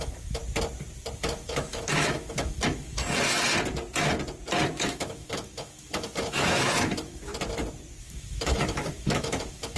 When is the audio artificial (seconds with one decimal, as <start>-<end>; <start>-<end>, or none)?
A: 0.0-0.4; 1.2-3.0; 4.7-7.3; 8.0-9.8